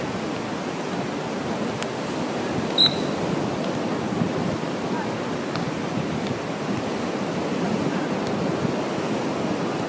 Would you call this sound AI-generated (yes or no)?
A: no